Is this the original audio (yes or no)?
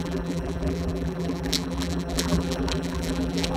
no